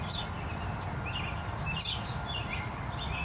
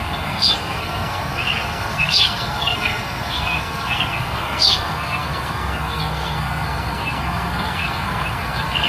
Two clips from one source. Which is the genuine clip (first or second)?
first